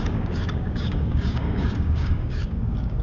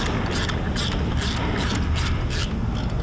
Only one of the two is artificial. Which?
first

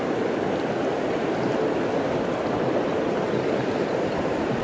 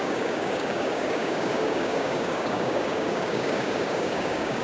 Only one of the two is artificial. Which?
second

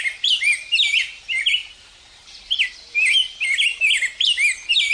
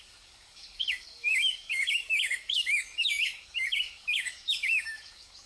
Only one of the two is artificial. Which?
second